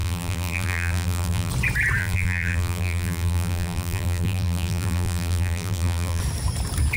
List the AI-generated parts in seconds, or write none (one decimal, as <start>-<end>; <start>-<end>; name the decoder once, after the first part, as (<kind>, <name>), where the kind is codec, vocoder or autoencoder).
0.0-1.5 (vocoder, BigVGAN v2); 2.0-6.2